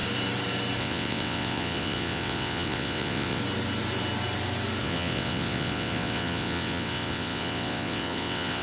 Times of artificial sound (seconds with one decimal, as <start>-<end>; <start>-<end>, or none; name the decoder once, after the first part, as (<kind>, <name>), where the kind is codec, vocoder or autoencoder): 0.8-3.4 (vocoder, WaveNeXt); 4.8-8.6